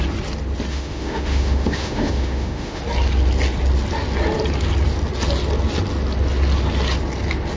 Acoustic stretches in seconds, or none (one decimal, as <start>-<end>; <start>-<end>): 0.0-0.7; 2.8-7.6